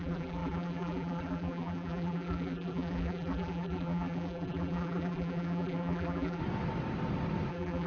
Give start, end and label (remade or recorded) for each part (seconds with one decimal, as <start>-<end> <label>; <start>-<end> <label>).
0.0-6.4 remade; 6.4-7.5 recorded; 7.5-7.9 remade